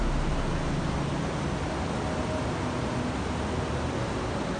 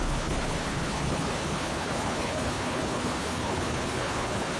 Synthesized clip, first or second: second